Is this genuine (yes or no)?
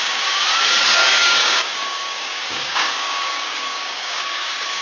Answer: no